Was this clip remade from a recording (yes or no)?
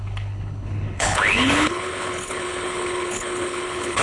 yes